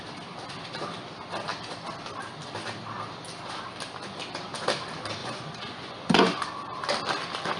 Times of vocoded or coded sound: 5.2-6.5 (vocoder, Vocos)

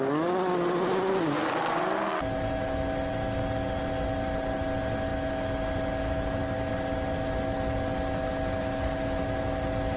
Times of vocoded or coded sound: none